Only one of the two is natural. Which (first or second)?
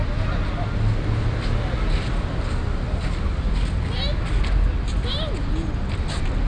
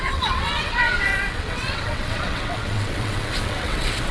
first